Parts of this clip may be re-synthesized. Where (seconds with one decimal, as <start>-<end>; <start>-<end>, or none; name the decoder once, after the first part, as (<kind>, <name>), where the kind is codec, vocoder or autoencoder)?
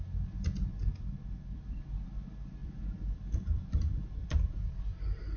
0.9-1.8 (vocoder, BigVGAN v2); 2.6-4.7